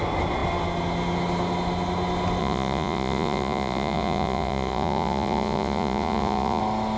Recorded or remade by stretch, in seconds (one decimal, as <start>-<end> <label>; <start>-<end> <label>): 0.0-2.4 recorded; 2.4-6.6 remade; 6.6-7.0 recorded